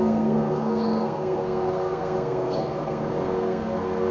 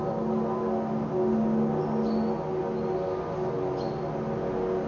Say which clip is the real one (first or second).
second